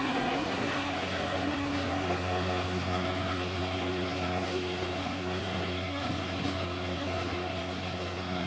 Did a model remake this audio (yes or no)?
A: yes